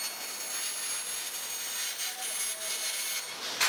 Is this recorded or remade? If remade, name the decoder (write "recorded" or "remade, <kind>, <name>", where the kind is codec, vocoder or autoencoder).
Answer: recorded